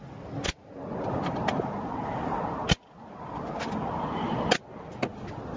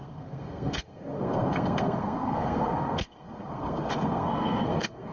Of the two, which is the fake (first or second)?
second